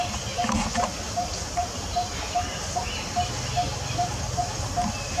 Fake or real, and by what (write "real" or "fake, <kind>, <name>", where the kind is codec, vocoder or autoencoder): real